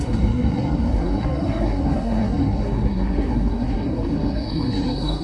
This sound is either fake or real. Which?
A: fake